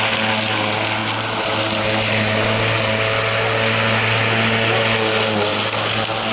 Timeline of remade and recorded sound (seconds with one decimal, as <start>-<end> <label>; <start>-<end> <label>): 0.0-6.3 recorded